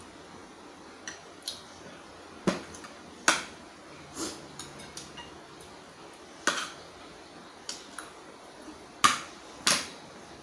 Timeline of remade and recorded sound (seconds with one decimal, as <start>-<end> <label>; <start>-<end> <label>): 0.0-10.4 recorded